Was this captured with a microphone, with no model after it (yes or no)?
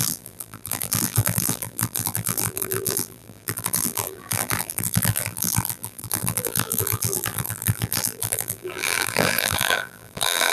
no